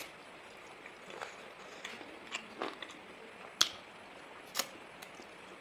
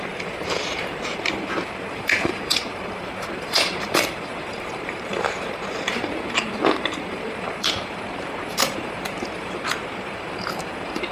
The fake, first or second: second